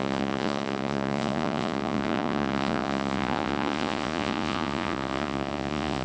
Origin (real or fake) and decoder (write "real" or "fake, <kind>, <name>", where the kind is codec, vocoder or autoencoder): fake, vocoder, Vocos